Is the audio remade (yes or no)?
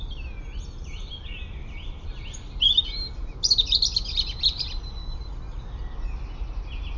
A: no